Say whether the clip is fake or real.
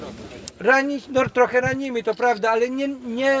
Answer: real